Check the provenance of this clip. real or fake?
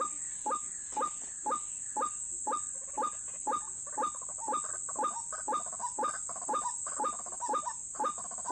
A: real